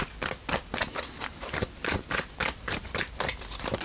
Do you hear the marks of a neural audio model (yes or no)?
no